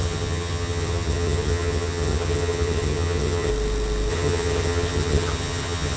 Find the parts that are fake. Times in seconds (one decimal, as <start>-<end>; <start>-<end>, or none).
0.0-3.5; 4.1-6.0